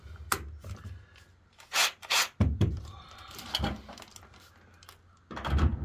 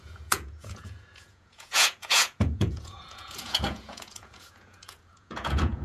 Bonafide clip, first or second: first